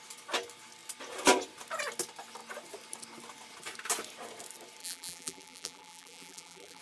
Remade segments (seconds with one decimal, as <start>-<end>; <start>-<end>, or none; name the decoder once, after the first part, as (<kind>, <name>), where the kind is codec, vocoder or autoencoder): 4.8-6.8 (vocoder, BigVGAN v2)